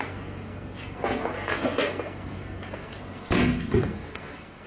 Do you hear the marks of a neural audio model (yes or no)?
yes